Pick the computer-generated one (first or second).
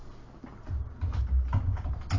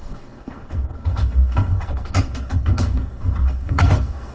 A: second